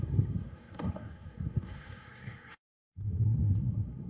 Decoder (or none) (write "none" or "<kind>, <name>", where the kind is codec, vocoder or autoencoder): codec, SNAC